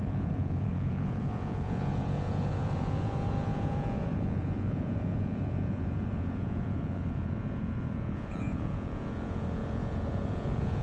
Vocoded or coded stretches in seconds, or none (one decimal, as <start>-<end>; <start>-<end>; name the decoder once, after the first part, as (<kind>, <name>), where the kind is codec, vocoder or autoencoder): 0.0-10.8 (vocoder, Vocos)